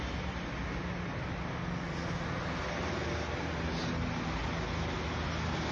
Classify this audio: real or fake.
real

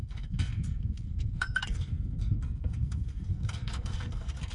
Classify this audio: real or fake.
fake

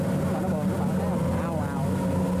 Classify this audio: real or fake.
real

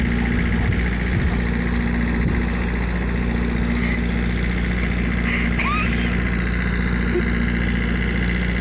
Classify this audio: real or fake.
real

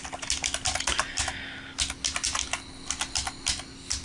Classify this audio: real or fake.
real